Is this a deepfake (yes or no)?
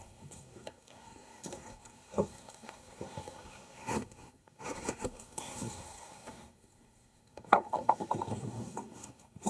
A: yes